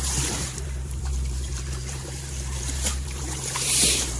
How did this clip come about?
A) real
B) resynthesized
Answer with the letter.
B